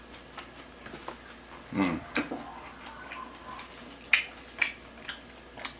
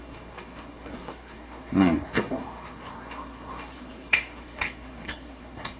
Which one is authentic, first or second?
first